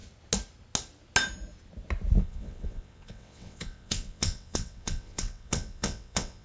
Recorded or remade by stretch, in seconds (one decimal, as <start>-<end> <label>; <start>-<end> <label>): 0.0-2.2 recorded; 2.2-6.4 remade